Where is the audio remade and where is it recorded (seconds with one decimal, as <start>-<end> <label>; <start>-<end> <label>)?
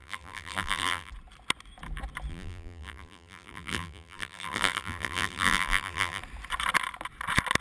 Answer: 0.0-1.1 remade; 1.1-2.3 recorded; 2.3-6.2 remade; 6.2-7.6 recorded